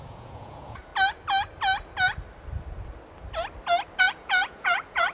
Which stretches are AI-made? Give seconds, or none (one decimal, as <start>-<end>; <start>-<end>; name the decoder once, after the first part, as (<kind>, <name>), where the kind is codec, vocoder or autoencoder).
0.0-0.9 (vocoder, Vocos); 4.0-5.1